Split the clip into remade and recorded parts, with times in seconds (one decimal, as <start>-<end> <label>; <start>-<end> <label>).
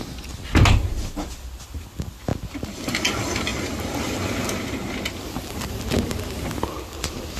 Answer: 0.0-7.4 recorded